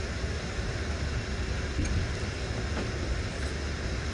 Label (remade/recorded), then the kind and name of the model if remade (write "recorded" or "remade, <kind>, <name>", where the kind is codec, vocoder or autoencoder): recorded